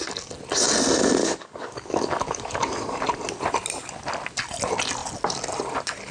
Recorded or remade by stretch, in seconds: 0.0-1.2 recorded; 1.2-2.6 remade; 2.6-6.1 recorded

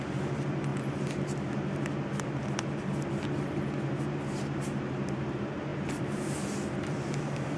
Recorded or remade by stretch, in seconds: 0.0-0.7 remade; 0.7-5.3 recorded; 5.3-7.6 remade

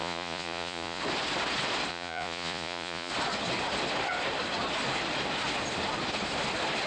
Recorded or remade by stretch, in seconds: 0.0-1.0 remade; 1.0-1.9 recorded; 1.9-3.1 remade; 3.1-6.9 recorded

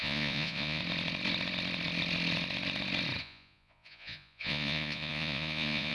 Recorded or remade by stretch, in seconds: 0.0-0.8 remade; 0.8-3.2 recorded; 3.2-5.9 remade

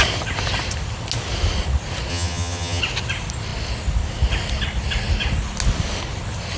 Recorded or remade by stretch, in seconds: 0.0-2.1 recorded; 2.1-2.8 remade; 2.8-6.6 recorded